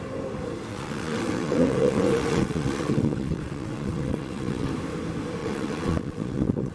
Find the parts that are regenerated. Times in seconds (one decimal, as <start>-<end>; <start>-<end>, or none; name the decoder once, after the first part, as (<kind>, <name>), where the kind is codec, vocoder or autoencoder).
0.7-4.7 (vocoder, WaveNeXt); 5.4-6.7